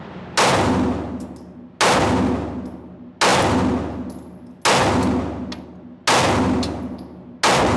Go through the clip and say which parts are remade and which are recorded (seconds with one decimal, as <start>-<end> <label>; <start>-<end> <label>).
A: 0.0-7.8 recorded